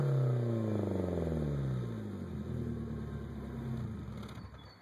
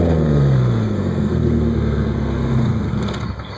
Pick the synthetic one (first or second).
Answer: second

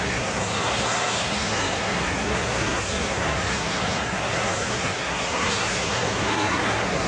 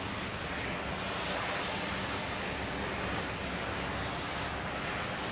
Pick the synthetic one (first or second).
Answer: first